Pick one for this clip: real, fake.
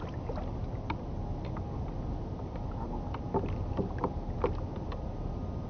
real